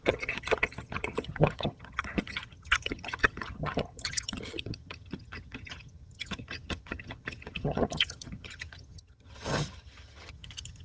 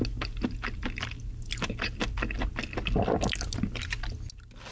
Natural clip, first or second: second